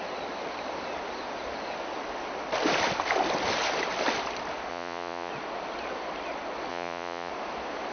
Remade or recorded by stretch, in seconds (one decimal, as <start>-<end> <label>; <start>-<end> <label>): 0.0-4.7 recorded; 4.7-5.3 remade; 5.3-6.7 recorded; 6.7-7.3 remade; 7.3-7.9 recorded